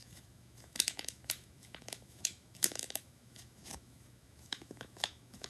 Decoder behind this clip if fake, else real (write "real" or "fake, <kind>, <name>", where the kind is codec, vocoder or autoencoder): fake, autoencoder, DAC-VAE